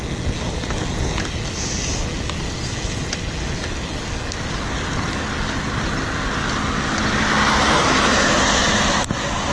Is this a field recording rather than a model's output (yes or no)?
yes